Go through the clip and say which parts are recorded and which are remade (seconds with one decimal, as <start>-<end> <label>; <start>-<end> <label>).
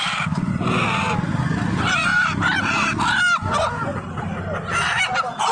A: 0.0-2.1 recorded; 2.1-2.7 remade; 2.7-5.5 recorded